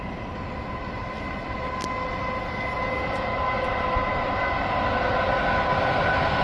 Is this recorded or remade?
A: recorded